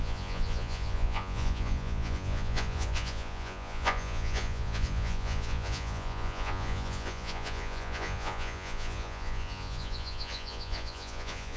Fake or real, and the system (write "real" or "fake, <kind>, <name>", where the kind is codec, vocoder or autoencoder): fake, vocoder, Vocos